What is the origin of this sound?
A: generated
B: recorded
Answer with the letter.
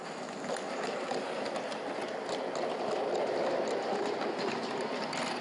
B